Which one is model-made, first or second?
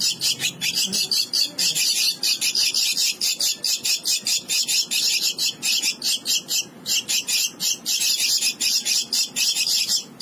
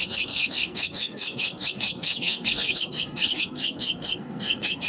second